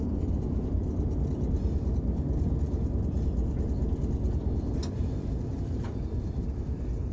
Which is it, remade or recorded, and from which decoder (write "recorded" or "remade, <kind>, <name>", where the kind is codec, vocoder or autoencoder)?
recorded